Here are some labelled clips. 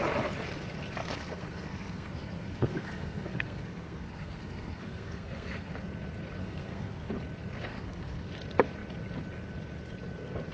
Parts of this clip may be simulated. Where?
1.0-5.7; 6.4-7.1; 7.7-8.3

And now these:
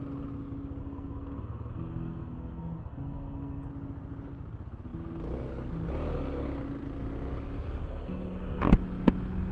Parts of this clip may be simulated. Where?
0.8-3.7; 7.8-8.6

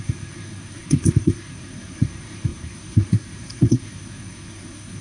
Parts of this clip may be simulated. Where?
0.0-5.0